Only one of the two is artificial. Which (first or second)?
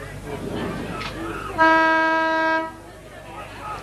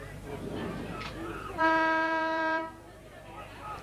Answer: second